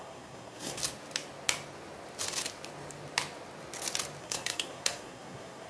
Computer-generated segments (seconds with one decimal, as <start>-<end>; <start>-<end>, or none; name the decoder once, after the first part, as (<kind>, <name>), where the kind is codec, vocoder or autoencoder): 0.0-0.8 (codec, SNAC); 4.2-5.7